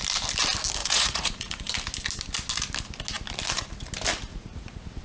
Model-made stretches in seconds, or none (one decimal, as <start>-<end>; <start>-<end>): 0.8-1.7; 4.3-5.0